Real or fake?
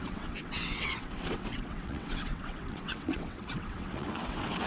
fake